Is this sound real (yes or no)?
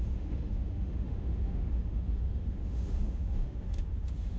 no